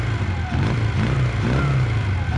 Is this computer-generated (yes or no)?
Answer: no